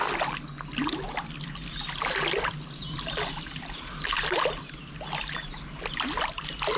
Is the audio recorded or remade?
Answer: recorded